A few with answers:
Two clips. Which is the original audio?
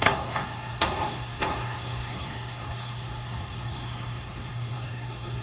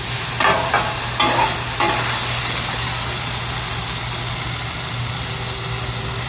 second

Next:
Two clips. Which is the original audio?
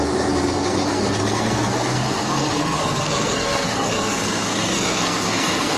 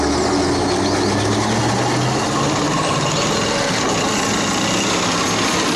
second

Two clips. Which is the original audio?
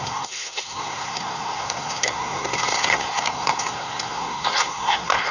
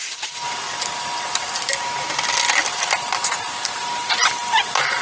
second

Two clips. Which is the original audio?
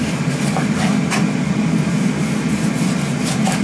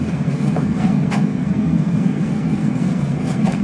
first